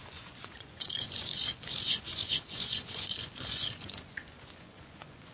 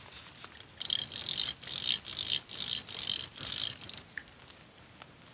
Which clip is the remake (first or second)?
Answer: first